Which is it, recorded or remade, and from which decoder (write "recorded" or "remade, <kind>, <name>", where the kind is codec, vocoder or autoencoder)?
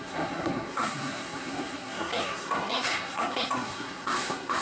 remade, codec, SNAC